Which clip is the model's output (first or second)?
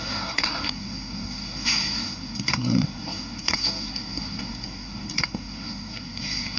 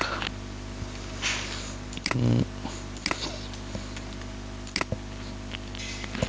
first